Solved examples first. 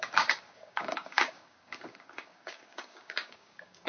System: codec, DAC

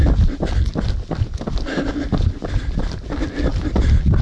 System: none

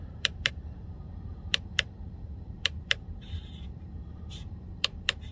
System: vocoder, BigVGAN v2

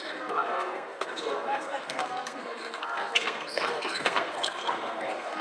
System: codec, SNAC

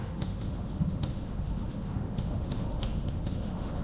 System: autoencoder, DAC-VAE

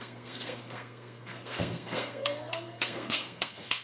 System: codec, SNAC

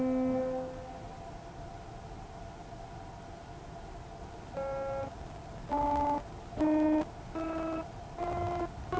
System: none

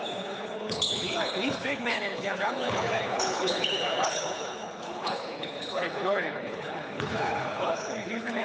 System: codec, HILCodec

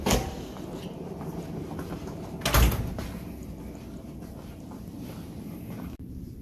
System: none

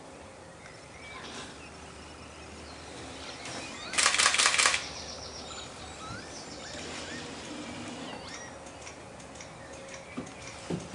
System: none